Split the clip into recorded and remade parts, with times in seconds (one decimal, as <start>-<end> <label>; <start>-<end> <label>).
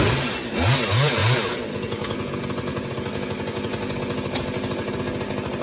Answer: 0.0-5.6 recorded